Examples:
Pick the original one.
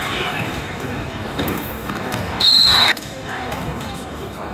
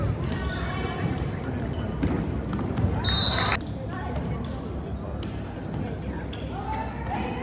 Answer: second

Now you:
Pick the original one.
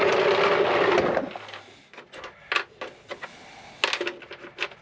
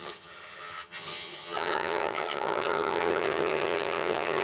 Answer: first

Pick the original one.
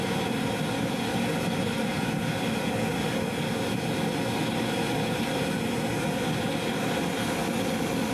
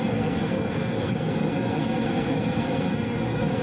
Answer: first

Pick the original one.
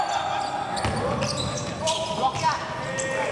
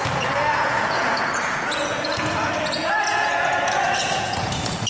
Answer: first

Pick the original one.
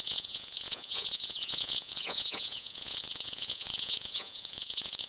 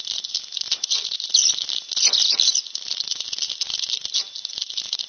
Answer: second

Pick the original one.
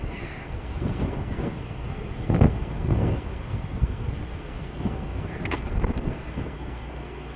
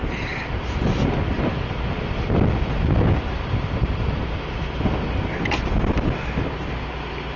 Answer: second